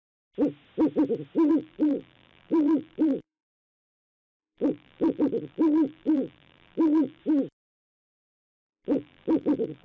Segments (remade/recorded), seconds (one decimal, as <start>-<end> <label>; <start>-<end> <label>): 0.0-1.5 recorded; 1.5-7.2 remade; 7.2-8.4 recorded; 8.4-9.8 remade